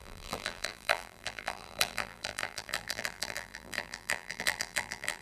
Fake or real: fake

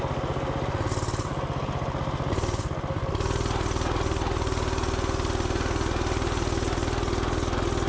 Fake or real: real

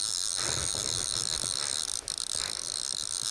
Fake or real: real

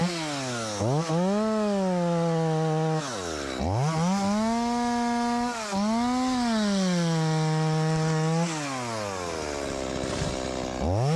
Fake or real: real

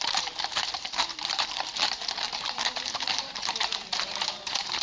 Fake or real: fake